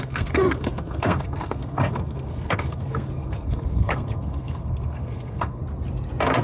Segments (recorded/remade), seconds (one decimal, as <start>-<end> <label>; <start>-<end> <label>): 0.0-5.6 remade; 5.6-6.4 recorded